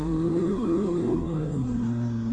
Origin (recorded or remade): remade